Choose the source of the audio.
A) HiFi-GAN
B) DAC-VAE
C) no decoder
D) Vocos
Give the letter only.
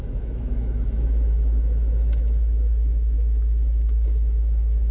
B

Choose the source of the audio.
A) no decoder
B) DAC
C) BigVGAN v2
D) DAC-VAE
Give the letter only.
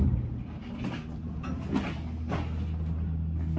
A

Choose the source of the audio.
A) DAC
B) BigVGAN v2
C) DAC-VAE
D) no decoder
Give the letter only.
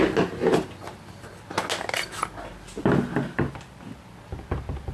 D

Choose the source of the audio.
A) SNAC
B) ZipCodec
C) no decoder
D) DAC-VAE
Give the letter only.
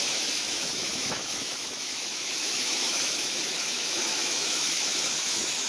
D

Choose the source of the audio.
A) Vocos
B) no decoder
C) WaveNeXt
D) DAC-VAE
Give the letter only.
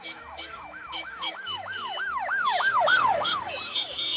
D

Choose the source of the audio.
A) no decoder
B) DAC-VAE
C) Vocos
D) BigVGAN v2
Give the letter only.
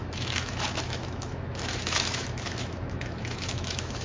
B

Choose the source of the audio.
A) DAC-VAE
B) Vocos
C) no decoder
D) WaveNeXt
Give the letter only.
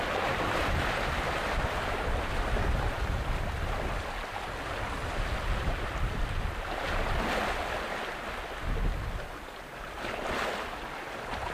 C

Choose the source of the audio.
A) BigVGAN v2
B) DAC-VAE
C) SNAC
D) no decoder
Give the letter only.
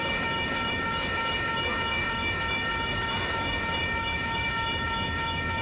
B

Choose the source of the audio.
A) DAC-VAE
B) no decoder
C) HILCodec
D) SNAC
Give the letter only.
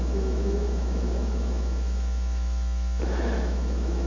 A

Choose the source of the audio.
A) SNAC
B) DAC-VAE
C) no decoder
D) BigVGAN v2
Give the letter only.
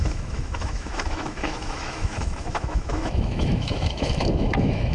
B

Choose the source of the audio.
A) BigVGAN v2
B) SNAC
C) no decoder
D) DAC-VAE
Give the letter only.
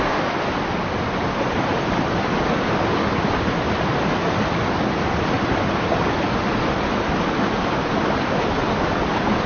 C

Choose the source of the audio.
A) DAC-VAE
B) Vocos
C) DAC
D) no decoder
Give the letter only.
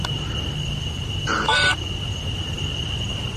D